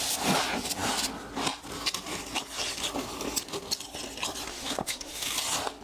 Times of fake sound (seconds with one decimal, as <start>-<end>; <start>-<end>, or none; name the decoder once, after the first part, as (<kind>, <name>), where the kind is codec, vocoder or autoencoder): 4.5-5.3 (autoencoder, DAC-VAE)